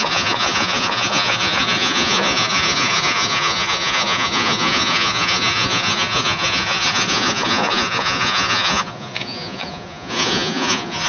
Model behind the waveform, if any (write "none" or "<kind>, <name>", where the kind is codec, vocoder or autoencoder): vocoder, Vocos